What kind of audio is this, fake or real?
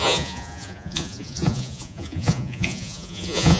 fake